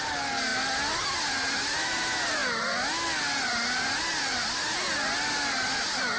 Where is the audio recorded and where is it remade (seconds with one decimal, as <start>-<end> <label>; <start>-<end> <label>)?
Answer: 0.0-6.2 recorded